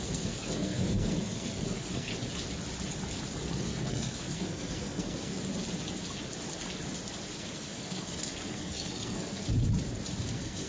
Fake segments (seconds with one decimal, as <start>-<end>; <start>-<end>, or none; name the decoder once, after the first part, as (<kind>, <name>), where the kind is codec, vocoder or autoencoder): 0.0-2.1 (codec, SNAC); 3.5-5.3; 7.3-9.4; 10.2-10.7